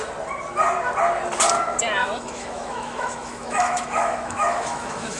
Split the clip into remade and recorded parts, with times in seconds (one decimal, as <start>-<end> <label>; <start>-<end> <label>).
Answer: 0.0-2.0 recorded; 2.0-5.2 remade